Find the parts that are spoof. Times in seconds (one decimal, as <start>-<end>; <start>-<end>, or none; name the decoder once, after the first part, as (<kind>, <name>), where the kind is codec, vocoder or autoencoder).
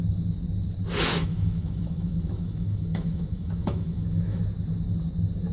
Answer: 1.1-4.4 (autoencoder, DAC-VAE)